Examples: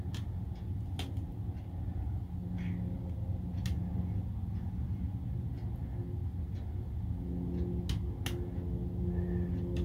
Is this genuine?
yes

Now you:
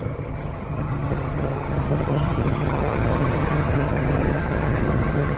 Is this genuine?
no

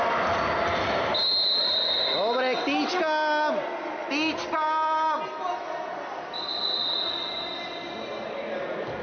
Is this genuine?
yes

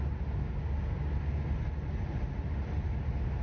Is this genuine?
yes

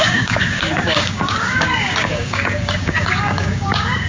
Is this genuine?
no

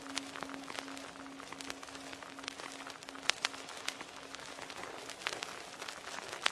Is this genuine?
yes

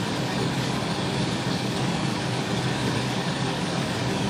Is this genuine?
no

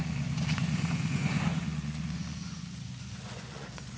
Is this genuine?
no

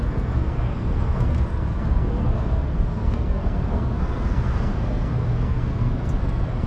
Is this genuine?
no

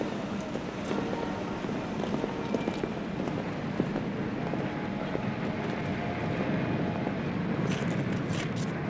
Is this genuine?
yes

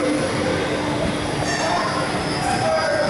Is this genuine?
yes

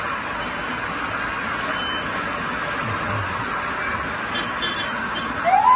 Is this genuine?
yes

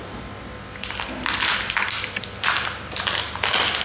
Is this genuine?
yes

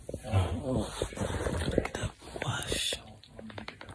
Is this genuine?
yes